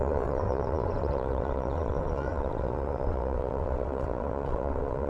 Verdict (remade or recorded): remade